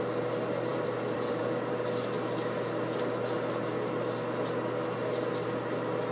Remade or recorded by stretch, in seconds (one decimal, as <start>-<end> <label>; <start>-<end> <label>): 0.0-0.7 recorded; 0.7-1.4 remade; 1.4-6.1 recorded